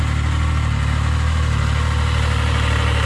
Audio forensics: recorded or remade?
recorded